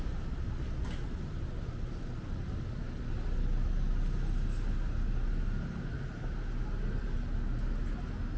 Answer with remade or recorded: recorded